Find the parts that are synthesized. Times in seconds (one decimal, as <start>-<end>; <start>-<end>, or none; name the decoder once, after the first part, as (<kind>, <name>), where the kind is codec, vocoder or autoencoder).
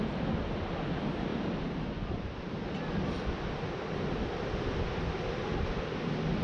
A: none